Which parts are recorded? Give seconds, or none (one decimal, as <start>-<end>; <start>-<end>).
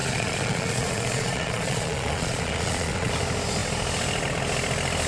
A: 3.1-5.1